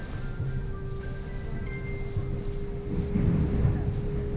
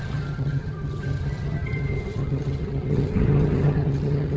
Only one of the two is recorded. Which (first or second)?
first